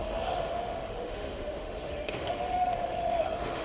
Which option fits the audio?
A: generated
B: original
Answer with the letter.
A